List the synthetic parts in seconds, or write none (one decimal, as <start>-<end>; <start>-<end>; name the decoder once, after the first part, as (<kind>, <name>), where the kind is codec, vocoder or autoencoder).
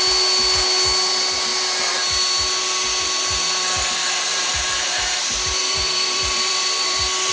4.3-7.3 (vocoder, BigVGAN v2)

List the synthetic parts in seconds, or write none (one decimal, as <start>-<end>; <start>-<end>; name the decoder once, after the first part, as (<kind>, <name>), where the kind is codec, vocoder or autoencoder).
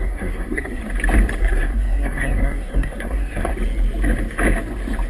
0.0-0.8 (codec, SNAC); 1.4-3.5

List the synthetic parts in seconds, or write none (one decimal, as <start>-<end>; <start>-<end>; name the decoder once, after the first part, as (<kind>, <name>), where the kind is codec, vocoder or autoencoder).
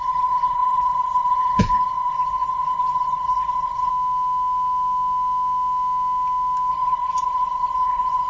0.0-3.9 (codec, HILCodec); 6.7-8.3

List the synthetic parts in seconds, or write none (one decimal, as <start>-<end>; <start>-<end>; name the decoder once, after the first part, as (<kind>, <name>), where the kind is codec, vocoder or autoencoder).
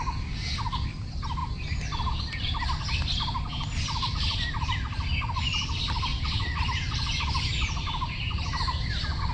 6.1-6.6 (vocoder, WaveNeXt)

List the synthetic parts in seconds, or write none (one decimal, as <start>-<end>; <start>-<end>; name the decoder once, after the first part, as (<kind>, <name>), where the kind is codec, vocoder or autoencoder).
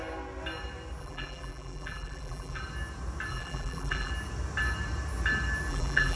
1.0-2.6 (vocoder, BigVGAN v2); 3.3-4.1; 5.7-6.2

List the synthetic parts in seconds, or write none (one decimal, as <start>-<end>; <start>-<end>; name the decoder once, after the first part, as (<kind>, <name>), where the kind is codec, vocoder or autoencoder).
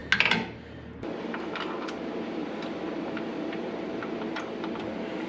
1.0-5.3 (vocoder, BigVGAN v2)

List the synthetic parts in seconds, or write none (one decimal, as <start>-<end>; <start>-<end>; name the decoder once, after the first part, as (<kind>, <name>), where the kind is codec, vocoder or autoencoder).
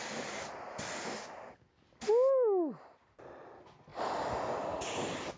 none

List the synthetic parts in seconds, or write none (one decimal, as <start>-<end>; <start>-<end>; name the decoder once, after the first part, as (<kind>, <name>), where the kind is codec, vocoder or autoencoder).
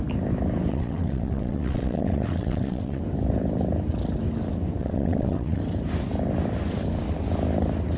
0.7-3.0 (vocoder, WaveNeXt); 4.8-5.6